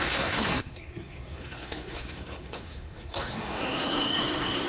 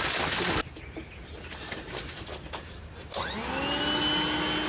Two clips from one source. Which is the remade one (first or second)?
first